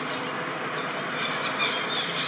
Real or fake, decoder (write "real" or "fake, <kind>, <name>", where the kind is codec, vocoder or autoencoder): real